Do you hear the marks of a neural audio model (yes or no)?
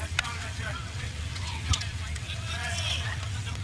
yes